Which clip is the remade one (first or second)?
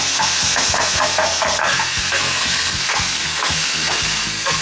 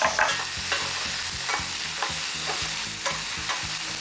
first